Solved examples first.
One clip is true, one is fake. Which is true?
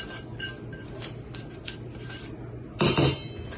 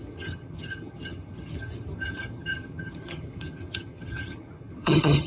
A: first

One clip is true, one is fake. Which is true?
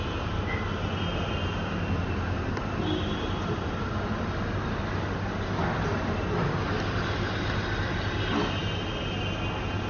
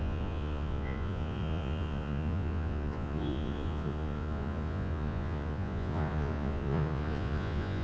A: first